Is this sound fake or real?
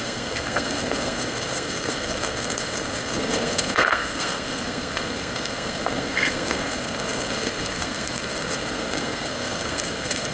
fake